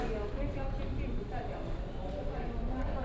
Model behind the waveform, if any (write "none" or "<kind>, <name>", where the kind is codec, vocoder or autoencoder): none